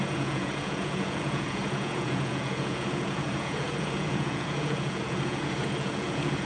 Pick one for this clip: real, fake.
fake